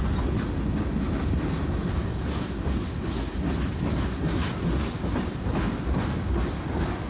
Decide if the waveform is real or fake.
real